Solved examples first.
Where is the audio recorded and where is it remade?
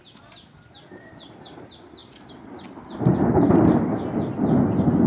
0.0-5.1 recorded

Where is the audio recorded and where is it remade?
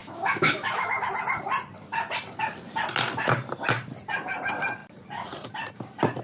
0.0-1.1 remade; 1.1-6.2 recorded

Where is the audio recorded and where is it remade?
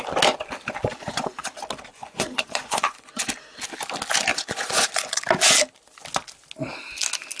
0.0-0.9 recorded; 0.9-1.5 remade; 1.5-1.9 recorded; 1.9-3.2 remade; 3.2-4.3 recorded; 4.3-5.2 remade; 5.2-7.4 recorded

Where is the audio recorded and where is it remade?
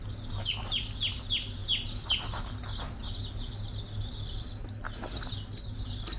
0.0-6.2 recorded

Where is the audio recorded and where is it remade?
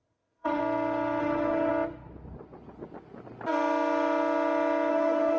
0.0-0.6 remade; 0.6-1.2 recorded; 1.2-1.7 remade; 1.7-4.9 recorded; 4.9-5.4 remade